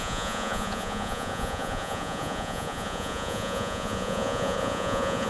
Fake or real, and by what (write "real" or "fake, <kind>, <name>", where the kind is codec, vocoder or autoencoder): fake, vocoder, Vocos